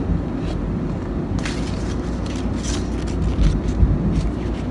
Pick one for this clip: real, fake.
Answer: real